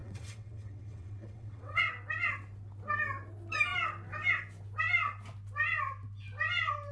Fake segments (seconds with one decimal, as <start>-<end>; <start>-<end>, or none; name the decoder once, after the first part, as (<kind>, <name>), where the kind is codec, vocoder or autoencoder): 0.0-1.8 (vocoder, WaveNeXt)